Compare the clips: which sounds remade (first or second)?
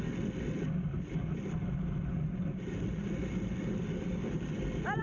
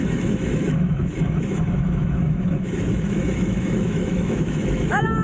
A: second